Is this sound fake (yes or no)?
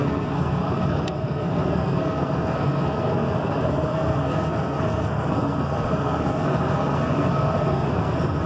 yes